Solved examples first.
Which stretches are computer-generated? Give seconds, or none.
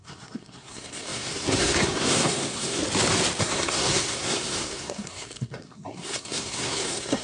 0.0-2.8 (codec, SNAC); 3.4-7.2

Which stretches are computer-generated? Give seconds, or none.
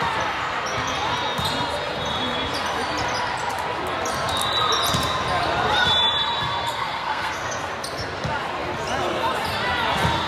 6.7-7.7 (codec, SNAC)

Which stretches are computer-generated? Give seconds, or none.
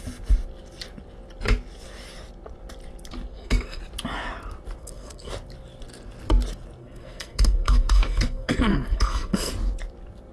3.3-3.8 (codec, SNAC); 4.8-5.3; 6.8-9.5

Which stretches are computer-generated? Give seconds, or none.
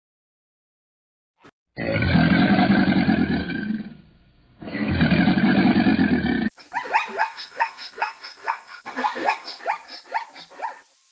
3.4-4.9 (codec, SNAC); 7.2-9.6